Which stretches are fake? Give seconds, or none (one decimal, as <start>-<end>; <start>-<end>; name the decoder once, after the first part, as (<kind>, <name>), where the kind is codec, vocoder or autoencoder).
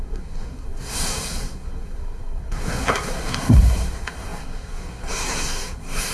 0.0-6.1 (codec, SNAC)